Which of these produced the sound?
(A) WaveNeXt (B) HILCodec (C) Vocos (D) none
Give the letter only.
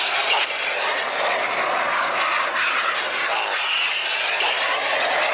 D